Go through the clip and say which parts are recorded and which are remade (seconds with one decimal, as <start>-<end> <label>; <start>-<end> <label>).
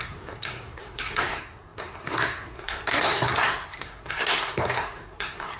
0.0-5.6 remade